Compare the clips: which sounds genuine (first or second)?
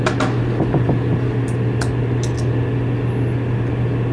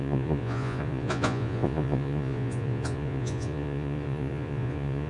first